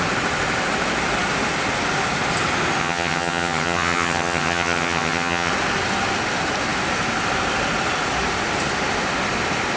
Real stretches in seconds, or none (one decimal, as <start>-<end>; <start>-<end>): 0.0-2.8; 5.5-9.8